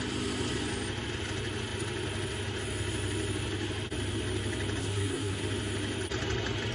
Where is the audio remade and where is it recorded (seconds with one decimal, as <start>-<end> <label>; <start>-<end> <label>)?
0.0-4.8 recorded; 4.8-5.4 remade; 5.4-6.7 recorded

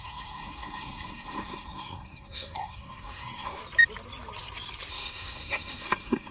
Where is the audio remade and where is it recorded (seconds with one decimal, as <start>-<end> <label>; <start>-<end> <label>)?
0.0-3.6 remade; 3.6-4.9 recorded; 4.9-6.3 remade

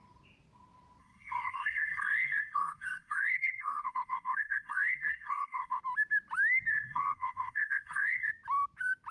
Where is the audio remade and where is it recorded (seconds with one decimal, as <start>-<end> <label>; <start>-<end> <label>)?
0.0-1.0 recorded; 1.0-5.8 remade; 5.8-6.7 recorded; 6.7-8.3 remade; 8.3-9.1 recorded

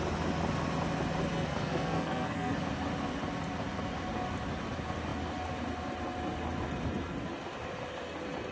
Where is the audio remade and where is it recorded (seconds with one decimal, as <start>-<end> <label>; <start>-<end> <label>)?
0.0-1.3 recorded; 1.3-2.6 remade; 2.6-8.5 recorded